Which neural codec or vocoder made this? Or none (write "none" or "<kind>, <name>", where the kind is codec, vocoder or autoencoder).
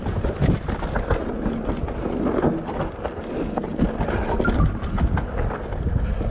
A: none